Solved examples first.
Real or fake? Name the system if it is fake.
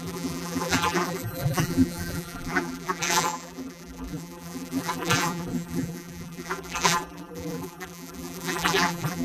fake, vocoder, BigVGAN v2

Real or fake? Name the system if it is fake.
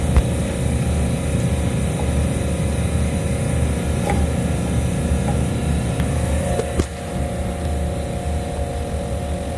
real